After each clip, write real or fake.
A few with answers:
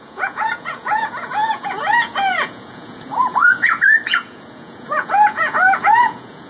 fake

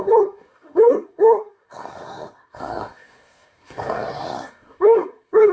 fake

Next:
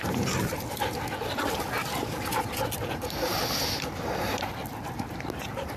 real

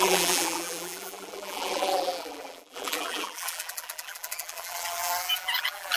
fake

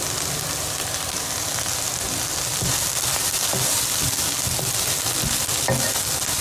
real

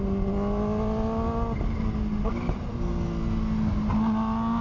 real